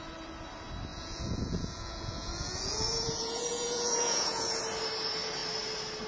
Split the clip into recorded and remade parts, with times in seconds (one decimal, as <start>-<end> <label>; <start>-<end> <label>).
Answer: 0.0-0.9 recorded; 0.9-4.6 remade; 4.6-6.1 recorded